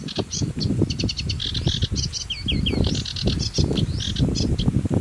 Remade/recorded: recorded